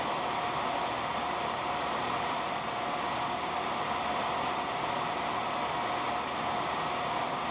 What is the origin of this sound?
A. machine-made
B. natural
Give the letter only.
A